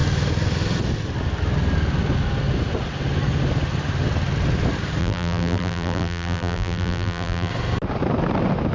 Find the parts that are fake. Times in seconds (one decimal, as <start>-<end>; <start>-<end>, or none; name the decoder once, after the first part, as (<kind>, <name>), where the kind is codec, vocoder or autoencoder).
5.0-7.5 (vocoder, BigVGAN v2)